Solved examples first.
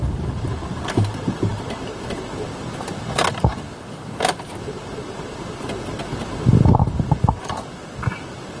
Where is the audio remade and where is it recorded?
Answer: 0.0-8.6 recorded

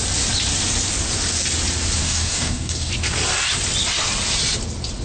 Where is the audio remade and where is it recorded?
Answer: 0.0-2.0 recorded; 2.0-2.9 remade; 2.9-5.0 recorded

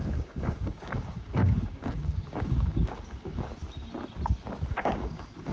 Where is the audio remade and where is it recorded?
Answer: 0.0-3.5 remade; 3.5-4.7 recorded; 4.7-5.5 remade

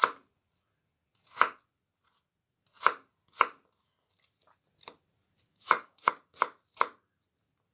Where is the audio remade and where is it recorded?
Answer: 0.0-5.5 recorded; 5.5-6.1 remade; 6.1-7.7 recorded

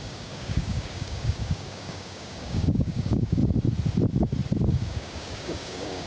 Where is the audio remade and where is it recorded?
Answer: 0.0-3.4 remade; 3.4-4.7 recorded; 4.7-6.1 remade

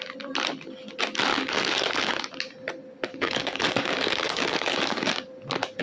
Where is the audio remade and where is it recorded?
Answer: 0.0-1.3 recorded; 1.3-2.2 remade; 2.2-3.1 recorded; 3.1-5.3 remade; 5.3-5.8 recorded

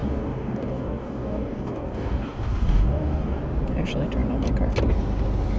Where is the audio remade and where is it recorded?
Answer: 0.0-3.4 remade; 3.4-5.6 recorded

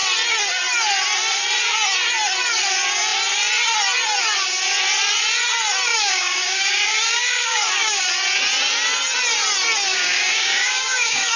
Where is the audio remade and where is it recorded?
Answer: 0.0-5.9 recorded; 5.9-8.0 remade; 8.0-9.9 recorded; 9.9-11.4 remade